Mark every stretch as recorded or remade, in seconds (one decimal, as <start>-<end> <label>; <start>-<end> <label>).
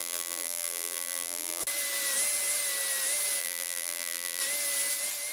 0.0-1.6 remade; 1.6-3.4 recorded; 3.4-4.4 remade; 4.4-5.3 recorded